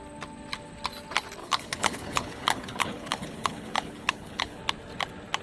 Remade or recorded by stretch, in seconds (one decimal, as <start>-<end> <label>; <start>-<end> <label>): 0.0-1.4 recorded; 1.4-4.6 remade; 4.6-5.4 recorded